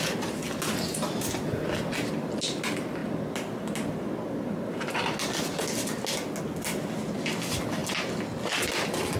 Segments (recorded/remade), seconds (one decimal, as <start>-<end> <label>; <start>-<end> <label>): 0.0-9.2 recorded

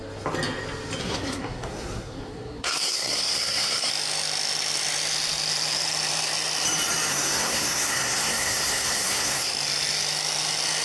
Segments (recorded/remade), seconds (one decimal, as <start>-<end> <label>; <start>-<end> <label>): 0.0-1.0 recorded; 1.0-3.9 remade; 3.9-7.1 recorded; 7.1-9.5 remade; 9.5-10.8 recorded

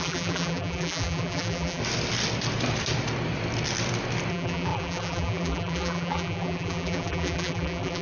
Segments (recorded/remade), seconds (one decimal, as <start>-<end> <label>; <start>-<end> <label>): 0.0-1.8 remade; 1.8-4.3 recorded; 4.3-8.0 remade